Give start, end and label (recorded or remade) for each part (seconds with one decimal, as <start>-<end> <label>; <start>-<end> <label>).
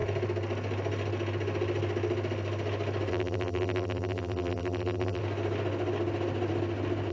0.0-3.1 recorded; 3.1-5.2 remade; 5.2-7.1 recorded